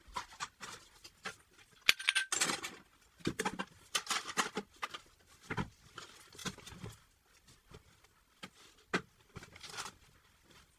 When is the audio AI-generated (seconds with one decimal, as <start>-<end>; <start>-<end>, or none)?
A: none